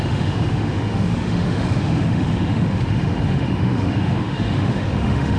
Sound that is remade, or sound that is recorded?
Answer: remade